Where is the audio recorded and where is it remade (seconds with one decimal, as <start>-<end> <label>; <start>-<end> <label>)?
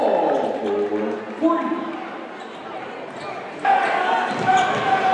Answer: 0.0-5.1 recorded